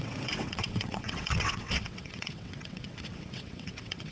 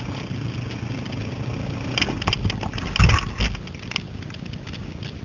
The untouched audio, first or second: second